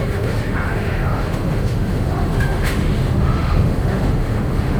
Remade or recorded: remade